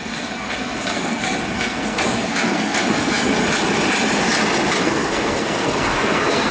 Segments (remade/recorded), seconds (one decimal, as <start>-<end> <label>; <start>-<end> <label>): 0.0-3.3 remade; 3.3-4.8 recorded; 4.8-6.5 remade